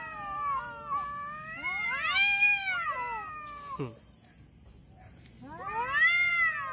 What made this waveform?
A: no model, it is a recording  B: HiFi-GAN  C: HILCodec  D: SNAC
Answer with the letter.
A